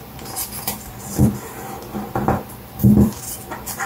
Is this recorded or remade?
remade